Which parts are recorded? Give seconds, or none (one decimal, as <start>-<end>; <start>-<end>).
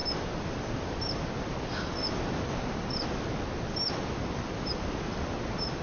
0.0-5.8